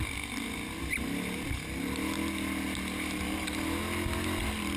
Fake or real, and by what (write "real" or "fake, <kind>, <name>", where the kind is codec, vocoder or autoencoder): real